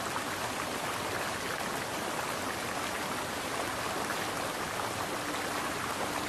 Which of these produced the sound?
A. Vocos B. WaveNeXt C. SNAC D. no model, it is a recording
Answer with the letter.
D